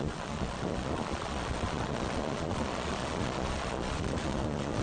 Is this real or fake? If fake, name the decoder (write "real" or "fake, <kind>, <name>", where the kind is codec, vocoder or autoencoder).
fake, vocoder, Vocos